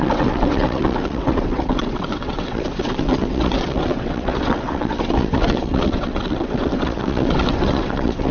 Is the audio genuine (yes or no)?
no